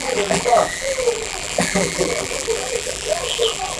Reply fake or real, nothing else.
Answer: fake